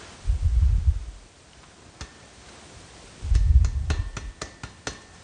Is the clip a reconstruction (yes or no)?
no